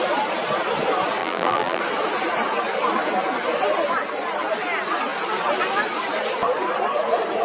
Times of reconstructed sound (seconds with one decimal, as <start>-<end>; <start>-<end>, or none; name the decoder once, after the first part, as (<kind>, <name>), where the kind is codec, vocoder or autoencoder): 1.2-1.8 (vocoder, BigVGAN v2)